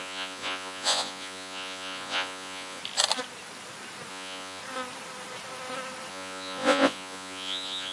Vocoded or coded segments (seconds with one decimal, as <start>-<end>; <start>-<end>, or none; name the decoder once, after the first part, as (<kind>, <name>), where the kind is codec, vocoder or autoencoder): 0.0-2.8 (vocoder, Vocos); 4.1-4.6; 6.1-7.9